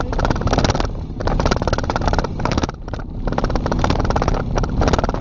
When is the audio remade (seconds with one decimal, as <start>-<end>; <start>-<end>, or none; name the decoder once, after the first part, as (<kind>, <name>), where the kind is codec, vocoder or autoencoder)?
1.2-3.3 (vocoder, BigVGAN v2)